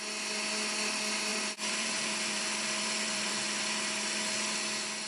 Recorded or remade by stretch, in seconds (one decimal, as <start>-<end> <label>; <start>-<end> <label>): 0.0-1.3 recorded; 1.3-4.0 remade; 4.0-5.1 recorded